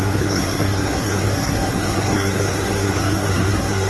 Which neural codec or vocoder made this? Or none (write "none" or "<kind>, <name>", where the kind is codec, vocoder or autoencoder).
codec, SNAC